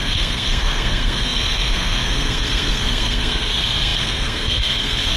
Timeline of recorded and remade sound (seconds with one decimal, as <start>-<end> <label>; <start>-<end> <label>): 0.0-5.2 remade